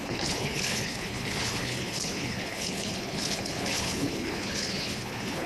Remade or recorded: remade